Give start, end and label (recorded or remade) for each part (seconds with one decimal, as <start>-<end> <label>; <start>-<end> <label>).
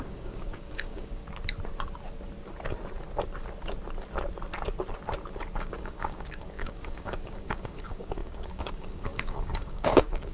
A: 0.0-1.2 remade; 1.2-5.6 recorded; 5.6-10.3 remade